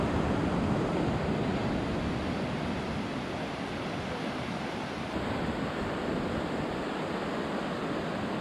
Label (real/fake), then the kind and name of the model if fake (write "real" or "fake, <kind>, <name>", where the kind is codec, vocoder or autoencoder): real